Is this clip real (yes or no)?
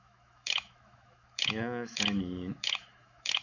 no